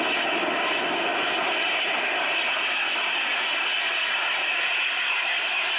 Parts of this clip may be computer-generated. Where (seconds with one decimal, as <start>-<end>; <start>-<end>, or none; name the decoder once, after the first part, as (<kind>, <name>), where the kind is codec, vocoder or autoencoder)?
none